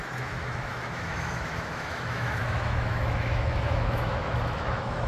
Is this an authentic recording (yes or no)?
no